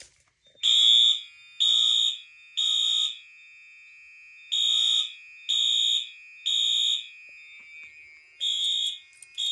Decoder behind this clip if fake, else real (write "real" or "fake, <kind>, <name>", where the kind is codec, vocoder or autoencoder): real